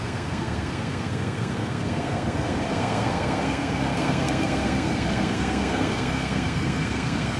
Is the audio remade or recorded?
remade